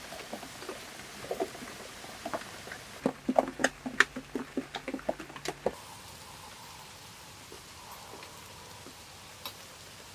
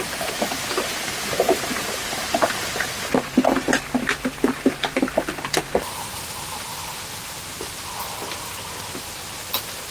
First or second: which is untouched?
first